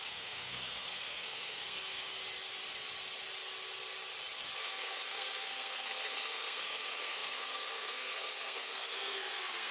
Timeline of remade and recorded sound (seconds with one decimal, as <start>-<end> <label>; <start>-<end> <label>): 0.0-2.2 remade; 2.2-4.6 recorded; 4.6-9.7 remade